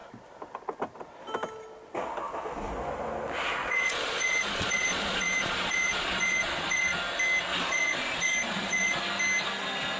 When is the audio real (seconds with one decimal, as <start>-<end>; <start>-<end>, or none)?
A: 0.0-3.6; 7.0-7.5; 9.0-10.0